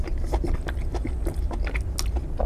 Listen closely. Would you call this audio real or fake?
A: real